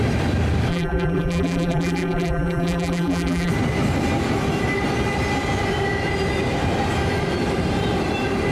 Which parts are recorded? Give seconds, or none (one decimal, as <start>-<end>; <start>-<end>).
0.0-0.7; 3.5-8.5